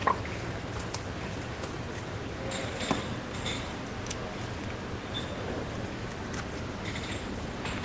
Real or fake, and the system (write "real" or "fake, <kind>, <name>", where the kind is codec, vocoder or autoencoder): real